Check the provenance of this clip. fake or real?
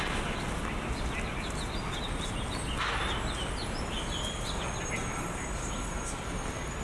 real